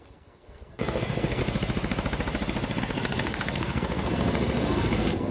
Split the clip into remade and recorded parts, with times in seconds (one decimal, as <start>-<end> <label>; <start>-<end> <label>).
0.0-1.4 remade; 1.4-2.8 recorded; 2.8-5.3 remade